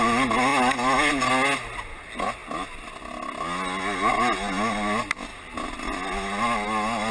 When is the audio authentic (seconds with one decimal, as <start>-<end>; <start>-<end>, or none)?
0.0-7.1